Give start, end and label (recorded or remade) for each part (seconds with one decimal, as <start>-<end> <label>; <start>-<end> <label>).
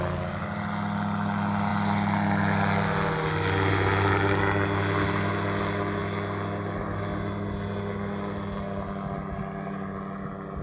0.0-10.6 recorded